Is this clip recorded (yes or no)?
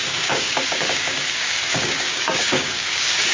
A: no